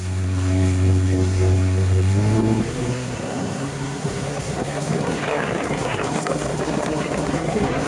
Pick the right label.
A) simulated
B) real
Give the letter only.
A